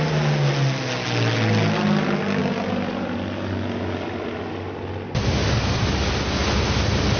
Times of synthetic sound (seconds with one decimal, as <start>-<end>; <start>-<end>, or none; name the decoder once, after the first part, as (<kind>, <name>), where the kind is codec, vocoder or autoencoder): none